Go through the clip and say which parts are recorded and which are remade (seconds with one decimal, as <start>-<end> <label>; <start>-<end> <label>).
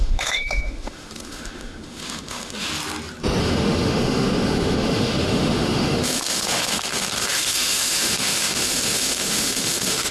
0.0-2.7 remade; 2.7-3.4 recorded; 3.4-10.1 remade